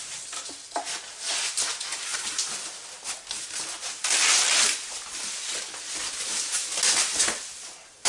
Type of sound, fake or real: real